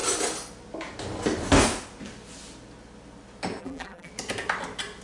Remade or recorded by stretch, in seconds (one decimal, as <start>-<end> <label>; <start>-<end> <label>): 0.0-3.6 recorded; 3.6-4.1 remade; 4.1-5.0 recorded